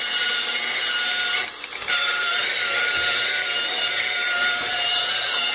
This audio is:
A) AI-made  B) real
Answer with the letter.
B